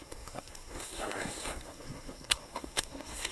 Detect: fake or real fake